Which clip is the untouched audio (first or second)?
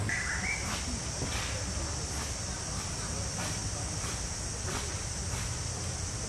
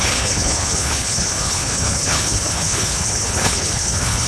first